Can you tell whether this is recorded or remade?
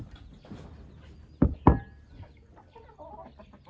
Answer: recorded